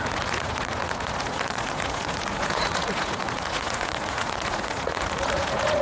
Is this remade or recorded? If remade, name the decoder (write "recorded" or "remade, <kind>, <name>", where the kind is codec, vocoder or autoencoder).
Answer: remade, vocoder, Vocos